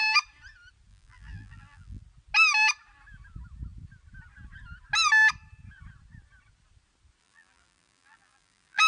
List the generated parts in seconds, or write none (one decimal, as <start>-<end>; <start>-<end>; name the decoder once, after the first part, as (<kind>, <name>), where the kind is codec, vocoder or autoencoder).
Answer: 0.9-2.0 (vocoder, BigVGAN v2); 7.2-8.9